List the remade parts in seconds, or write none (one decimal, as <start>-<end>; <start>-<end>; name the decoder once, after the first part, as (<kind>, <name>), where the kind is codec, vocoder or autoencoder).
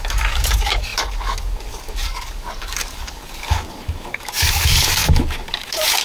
0.0-6.0 (codec, DAC)